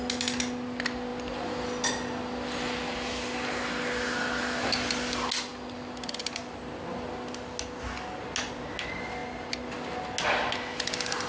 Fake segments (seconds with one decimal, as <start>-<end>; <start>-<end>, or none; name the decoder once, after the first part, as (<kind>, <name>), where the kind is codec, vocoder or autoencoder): none